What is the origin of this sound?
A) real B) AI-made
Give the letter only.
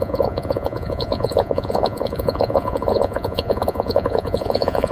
B